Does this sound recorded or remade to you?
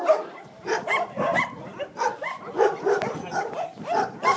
remade